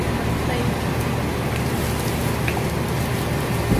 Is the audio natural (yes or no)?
yes